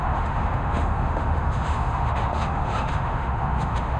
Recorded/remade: remade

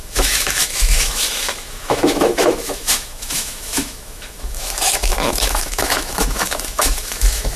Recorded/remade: remade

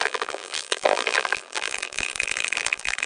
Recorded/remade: remade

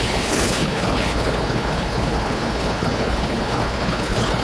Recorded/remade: remade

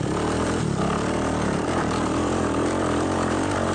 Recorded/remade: remade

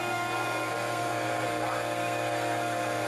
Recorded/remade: remade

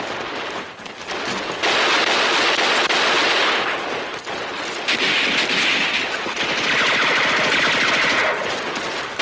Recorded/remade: recorded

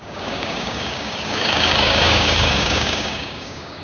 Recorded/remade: remade